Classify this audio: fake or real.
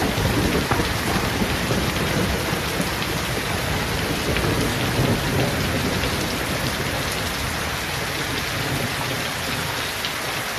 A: real